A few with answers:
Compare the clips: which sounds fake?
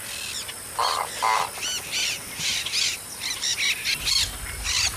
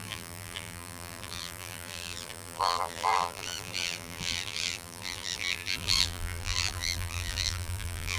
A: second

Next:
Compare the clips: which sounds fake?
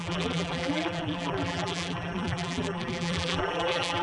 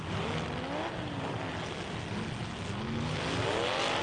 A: first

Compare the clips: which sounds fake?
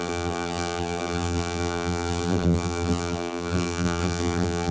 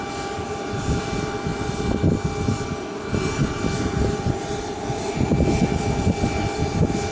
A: first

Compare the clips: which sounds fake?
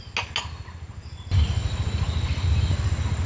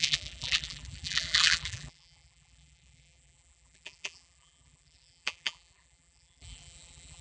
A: second